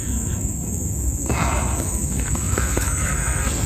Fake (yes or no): yes